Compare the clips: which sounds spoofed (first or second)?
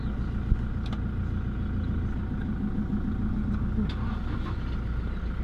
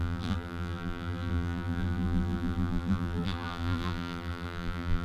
second